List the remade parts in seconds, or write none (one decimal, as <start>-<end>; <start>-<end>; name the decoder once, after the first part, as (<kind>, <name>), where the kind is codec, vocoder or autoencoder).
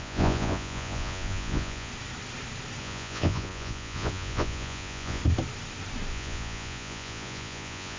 0.0-1.9 (vocoder, Vocos); 2.8-5.2; 6.1-8.0